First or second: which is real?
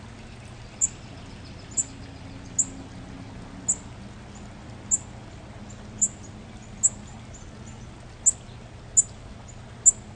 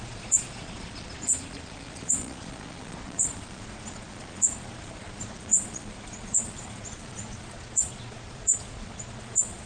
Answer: first